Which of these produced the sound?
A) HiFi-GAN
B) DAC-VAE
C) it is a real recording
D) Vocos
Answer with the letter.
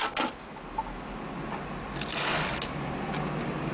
C